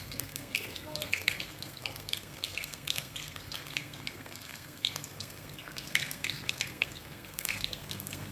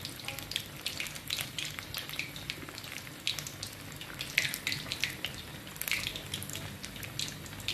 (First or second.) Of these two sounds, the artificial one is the first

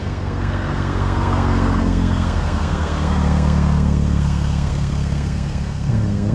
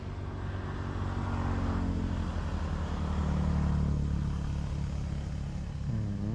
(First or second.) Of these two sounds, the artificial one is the first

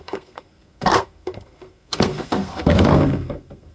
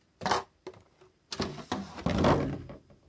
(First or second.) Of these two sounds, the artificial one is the first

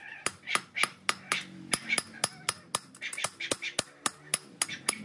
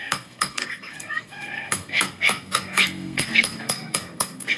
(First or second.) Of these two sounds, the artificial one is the second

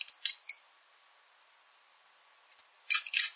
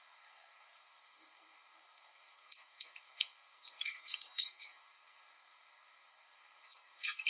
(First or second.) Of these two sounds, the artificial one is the second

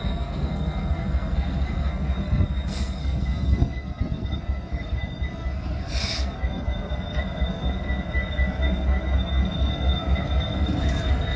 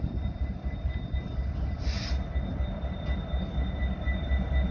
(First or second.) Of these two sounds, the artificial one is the first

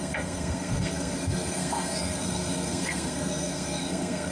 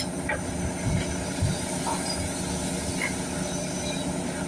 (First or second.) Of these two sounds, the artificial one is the first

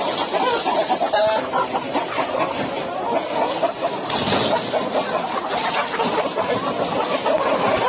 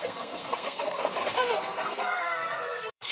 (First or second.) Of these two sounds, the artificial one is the second